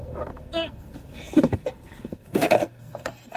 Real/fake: fake